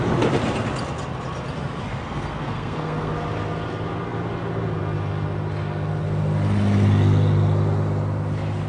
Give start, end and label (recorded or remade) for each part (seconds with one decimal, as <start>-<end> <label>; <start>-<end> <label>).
0.0-1.9 recorded; 1.9-3.1 remade; 3.1-8.7 recorded